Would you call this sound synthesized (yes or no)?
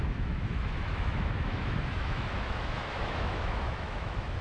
yes